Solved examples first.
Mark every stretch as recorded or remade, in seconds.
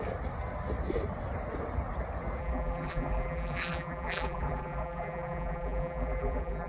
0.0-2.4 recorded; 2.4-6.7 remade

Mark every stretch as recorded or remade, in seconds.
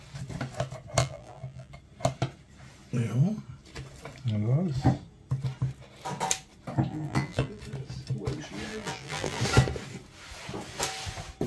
0.0-1.0 recorded; 1.0-1.7 remade; 1.7-6.9 recorded; 6.9-7.6 remade; 7.6-8.7 recorded; 8.7-9.4 remade; 9.4-11.5 recorded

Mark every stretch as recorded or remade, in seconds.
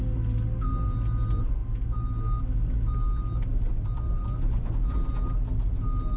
0.0-3.5 recorded; 3.5-5.1 remade; 5.1-6.2 recorded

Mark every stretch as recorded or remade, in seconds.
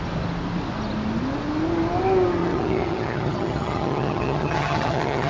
0.0-2.4 recorded; 2.4-5.3 remade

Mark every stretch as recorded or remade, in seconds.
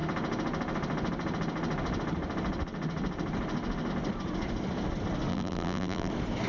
0.0-5.3 recorded; 5.3-6.1 remade; 6.1-6.5 recorded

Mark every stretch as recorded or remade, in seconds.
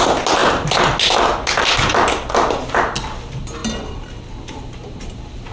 0.0-5.5 recorded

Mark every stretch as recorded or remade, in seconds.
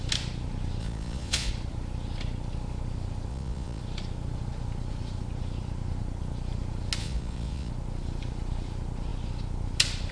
0.0-0.8 recorded; 0.8-1.5 remade; 1.5-3.3 recorded; 3.3-3.8 remade; 3.8-7.0 recorded; 7.0-7.7 remade; 7.7-10.1 recorded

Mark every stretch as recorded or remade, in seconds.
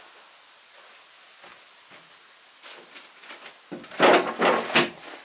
0.0-5.2 recorded